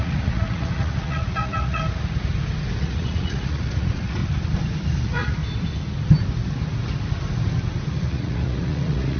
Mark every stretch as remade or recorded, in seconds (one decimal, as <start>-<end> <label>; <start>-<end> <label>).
0.0-1.8 remade; 1.8-2.8 recorded; 2.8-4.2 remade; 4.2-5.0 recorded; 5.0-5.4 remade; 5.4-7.9 recorded; 7.9-9.2 remade